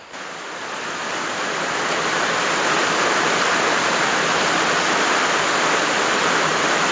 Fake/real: real